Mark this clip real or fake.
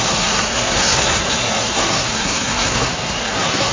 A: fake